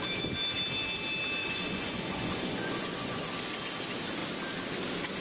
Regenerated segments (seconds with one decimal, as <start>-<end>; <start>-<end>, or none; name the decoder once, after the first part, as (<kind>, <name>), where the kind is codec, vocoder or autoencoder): 1.4-3.3 (vocoder, Vocos)